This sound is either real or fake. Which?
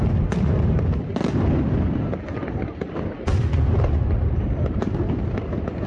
real